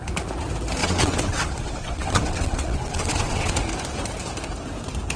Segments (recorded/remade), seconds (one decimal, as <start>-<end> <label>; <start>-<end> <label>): 0.0-0.8 recorded; 0.8-3.5 remade; 3.5-5.2 recorded